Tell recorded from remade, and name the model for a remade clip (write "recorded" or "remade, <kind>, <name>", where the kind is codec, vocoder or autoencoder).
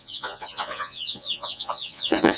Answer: remade, vocoder, Vocos